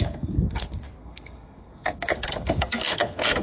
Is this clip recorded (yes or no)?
no